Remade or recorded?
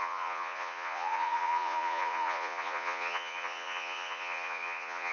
remade